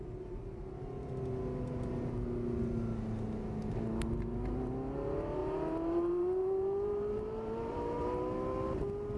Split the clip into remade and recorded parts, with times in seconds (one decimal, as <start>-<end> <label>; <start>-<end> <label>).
0.0-5.4 recorded; 5.4-8.2 remade; 8.2-9.2 recorded